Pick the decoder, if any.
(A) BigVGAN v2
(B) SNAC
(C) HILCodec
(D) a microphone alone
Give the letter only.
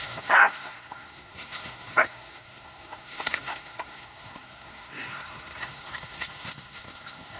B